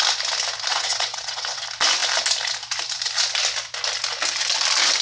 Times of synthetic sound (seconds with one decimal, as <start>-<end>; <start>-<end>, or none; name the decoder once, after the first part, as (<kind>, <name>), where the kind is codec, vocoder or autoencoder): 0.7-1.6 (vocoder, WaveNeXt)